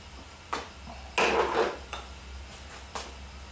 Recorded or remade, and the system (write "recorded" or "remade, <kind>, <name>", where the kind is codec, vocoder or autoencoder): recorded